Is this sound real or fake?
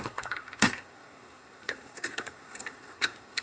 fake